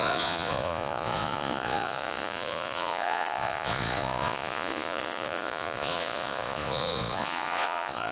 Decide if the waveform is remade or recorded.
remade